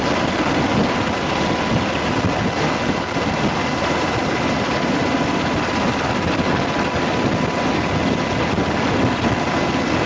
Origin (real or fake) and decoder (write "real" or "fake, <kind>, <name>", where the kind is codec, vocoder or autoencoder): real